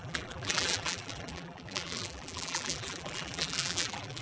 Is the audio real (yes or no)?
no